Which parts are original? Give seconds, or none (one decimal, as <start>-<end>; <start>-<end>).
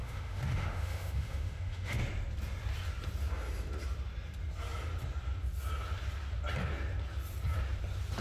2.0-8.2